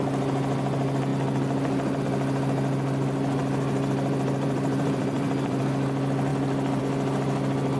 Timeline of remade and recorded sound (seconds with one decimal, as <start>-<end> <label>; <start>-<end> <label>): 0.0-3.4 recorded; 3.4-5.6 remade; 5.6-7.8 recorded